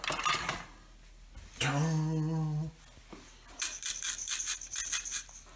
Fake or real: real